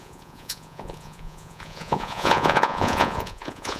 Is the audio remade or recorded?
remade